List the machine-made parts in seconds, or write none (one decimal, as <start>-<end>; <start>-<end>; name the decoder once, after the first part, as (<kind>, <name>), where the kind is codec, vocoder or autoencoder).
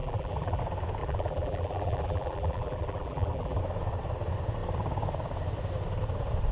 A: 0.0-0.6 (vocoder, BigVGAN v2); 1.0-3.6